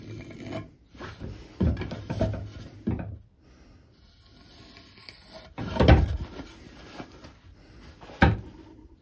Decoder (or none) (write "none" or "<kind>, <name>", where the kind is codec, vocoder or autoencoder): none